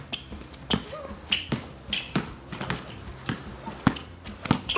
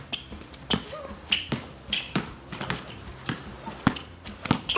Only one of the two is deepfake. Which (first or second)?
second